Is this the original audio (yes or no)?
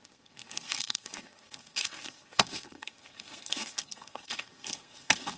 no